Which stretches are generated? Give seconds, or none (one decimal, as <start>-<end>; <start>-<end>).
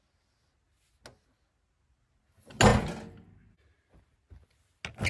none